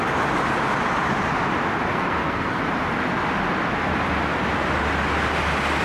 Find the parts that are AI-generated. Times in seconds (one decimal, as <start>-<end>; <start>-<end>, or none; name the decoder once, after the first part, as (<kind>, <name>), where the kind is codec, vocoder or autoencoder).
1.9-2.6 (codec, SNAC)